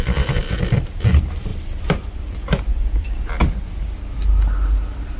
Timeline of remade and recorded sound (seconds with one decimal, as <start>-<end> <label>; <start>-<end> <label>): 0.0-0.4 recorded; 0.4-1.1 remade; 1.1-1.5 recorded; 1.5-3.2 remade; 3.2-5.2 recorded